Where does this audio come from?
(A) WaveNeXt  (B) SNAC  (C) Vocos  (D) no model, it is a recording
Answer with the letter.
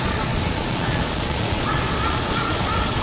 C